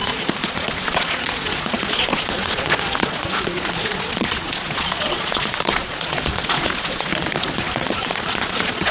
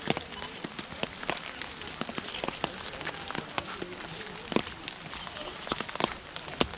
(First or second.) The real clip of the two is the second